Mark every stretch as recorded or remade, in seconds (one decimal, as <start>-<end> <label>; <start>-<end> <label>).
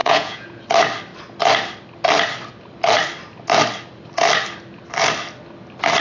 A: 0.0-0.6 remade; 0.6-6.0 recorded